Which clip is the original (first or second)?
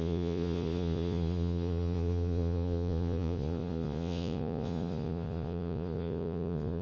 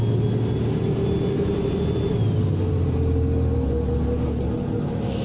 second